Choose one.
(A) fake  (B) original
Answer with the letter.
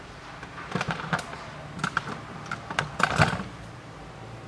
A